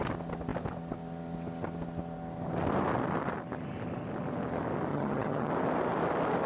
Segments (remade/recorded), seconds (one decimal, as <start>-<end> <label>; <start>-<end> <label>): 0.0-4.9 recorded; 4.9-5.5 remade; 5.5-6.5 recorded